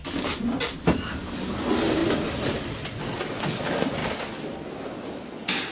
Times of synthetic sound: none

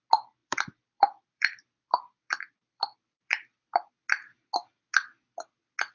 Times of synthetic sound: 0.4-3.9 (vocoder, BigVGAN v2)

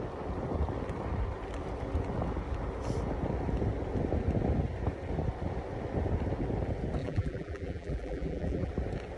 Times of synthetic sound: 7.0-8.7 (vocoder, BigVGAN v2)

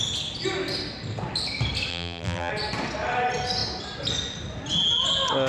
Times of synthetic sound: 1.9-2.5 (vocoder, BigVGAN v2)

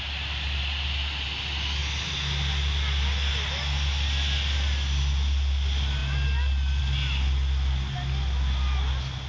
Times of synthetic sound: none